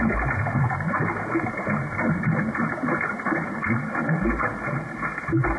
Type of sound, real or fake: real